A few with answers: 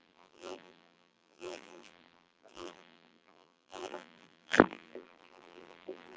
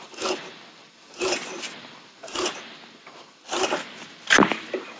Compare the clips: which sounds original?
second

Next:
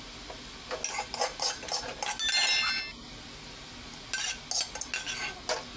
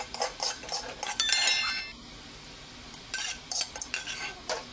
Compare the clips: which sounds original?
first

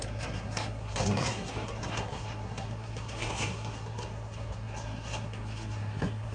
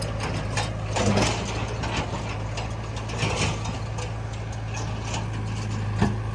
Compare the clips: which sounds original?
second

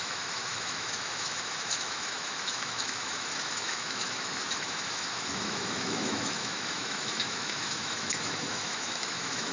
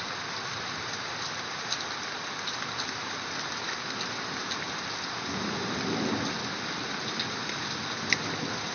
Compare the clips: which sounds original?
second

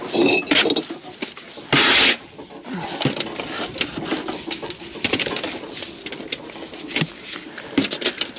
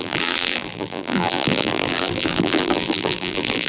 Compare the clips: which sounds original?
first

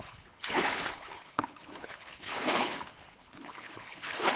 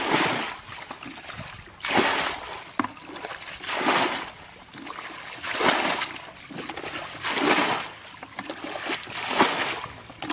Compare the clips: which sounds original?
second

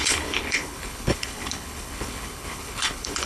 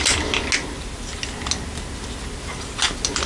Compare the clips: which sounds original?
second